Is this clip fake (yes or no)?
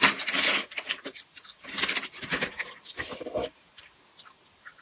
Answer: yes